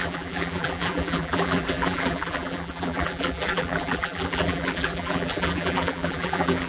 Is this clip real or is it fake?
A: fake